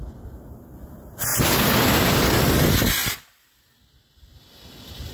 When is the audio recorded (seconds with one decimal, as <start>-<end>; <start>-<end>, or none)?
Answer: 0.0-5.1